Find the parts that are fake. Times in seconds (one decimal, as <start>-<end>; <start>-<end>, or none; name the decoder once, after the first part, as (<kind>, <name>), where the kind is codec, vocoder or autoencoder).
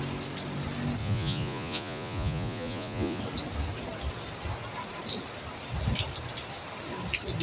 1.0-3.2 (vocoder, Vocos)